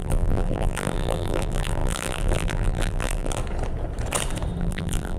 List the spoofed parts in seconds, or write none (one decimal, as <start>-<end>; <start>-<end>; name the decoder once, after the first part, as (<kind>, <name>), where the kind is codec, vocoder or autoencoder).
0.0-3.4 (vocoder, BigVGAN v2); 4.6-5.2